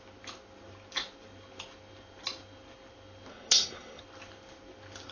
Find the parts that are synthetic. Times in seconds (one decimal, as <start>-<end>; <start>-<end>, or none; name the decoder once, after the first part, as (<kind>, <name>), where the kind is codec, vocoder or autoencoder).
3.3-4.0 (codec, SNAC)